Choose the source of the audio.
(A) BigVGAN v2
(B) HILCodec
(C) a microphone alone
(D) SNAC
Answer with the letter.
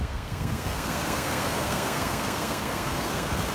D